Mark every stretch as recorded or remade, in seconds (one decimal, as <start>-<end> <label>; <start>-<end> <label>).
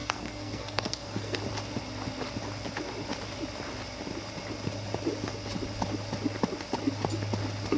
0.0-1.4 remade; 1.4-7.8 recorded